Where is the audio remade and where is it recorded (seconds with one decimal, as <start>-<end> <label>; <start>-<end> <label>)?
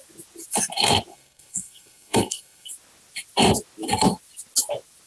0.0-1.1 recorded; 1.1-2.7 remade; 2.7-5.1 recorded